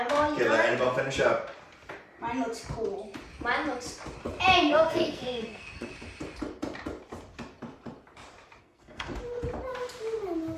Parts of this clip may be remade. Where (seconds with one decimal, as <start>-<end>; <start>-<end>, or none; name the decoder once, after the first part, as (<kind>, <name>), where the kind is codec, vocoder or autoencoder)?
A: 4.7-5.9 (codec, SNAC); 8.6-9.1